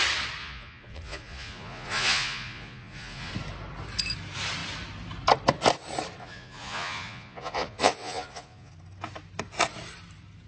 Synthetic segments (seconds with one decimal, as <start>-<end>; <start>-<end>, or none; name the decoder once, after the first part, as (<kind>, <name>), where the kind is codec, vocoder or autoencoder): 0.4-3.3 (vocoder, Vocos); 6.2-8.7